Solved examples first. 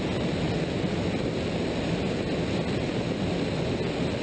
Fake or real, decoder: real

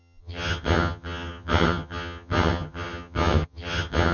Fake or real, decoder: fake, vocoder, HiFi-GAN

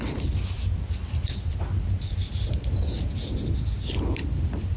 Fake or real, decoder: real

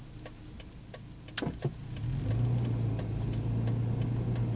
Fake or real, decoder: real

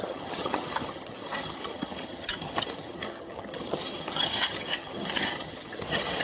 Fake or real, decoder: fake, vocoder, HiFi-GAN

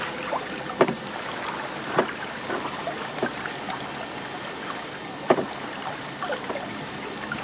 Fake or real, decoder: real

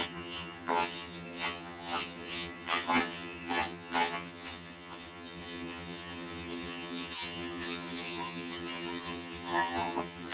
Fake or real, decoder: fake, vocoder, HiFi-GAN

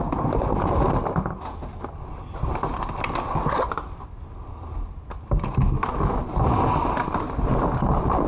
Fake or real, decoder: real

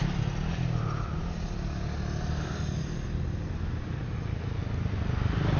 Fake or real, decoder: real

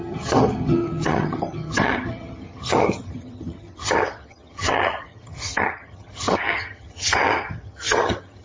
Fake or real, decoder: fake, vocoder, HiFi-GAN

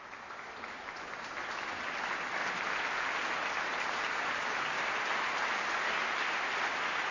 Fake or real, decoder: real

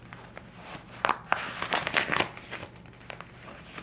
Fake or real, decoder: real